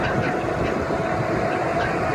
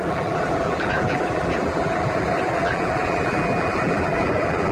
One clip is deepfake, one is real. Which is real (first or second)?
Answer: first